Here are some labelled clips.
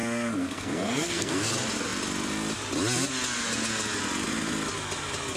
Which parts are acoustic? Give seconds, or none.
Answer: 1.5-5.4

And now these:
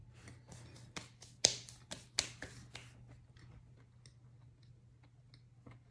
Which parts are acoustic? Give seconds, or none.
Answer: 0.0-5.9

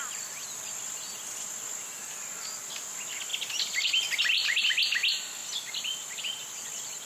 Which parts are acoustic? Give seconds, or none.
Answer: 0.0-3.3; 4.6-5.4; 6.2-7.1

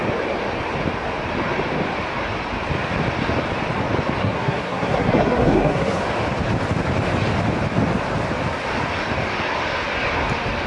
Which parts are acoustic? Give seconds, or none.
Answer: 0.0-4.2; 6.0-10.7

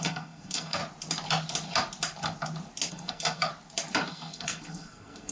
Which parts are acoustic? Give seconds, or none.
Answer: 0.8-2.9; 3.5-4.1